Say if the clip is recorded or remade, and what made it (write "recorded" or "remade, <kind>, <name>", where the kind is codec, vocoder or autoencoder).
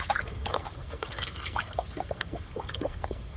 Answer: remade, codec, SNAC